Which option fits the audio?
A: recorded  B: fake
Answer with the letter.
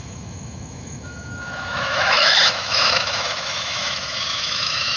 B